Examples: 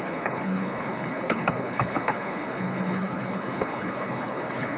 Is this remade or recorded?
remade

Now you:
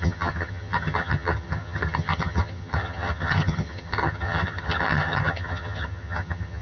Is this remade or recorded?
remade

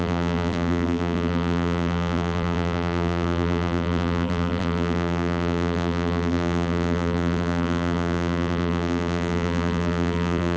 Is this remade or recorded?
remade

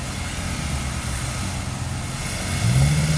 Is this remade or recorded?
recorded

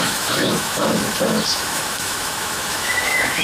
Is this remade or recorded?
remade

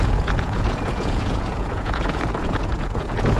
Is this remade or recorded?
remade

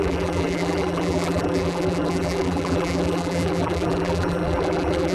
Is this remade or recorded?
remade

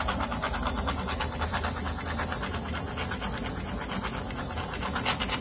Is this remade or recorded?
recorded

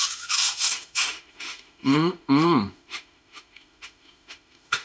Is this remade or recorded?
remade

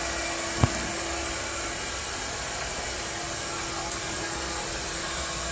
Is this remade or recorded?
recorded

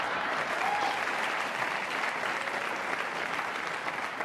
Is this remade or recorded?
recorded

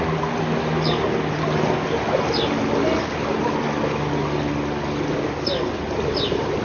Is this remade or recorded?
recorded